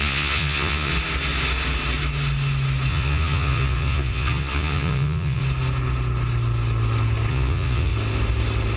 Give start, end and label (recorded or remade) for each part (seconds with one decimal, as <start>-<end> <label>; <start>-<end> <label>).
0.0-0.9 remade; 0.9-2.9 recorded; 2.9-5.4 remade; 5.4-7.3 recorded; 7.3-7.9 remade; 7.9-8.8 recorded